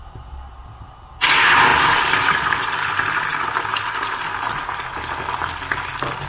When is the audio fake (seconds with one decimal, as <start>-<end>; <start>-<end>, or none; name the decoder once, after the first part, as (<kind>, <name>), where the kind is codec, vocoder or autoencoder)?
none